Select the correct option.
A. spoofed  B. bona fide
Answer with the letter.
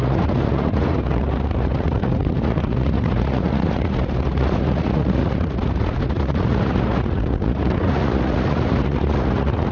A